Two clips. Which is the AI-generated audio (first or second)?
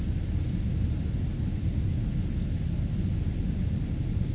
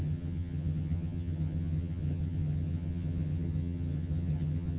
second